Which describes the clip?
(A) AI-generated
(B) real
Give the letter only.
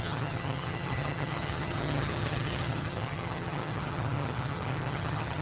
A